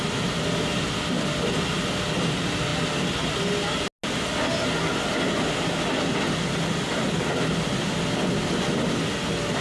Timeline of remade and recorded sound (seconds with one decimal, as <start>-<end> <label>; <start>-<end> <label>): 0.0-9.6 recorded